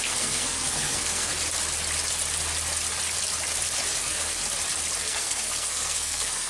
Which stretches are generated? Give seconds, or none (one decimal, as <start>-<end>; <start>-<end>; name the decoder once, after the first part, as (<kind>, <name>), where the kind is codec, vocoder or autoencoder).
0.0-1.3 (codec, SNAC); 3.9-4.4; 5.0-6.5